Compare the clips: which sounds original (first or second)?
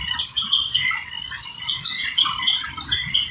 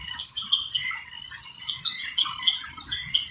second